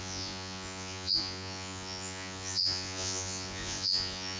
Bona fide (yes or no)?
no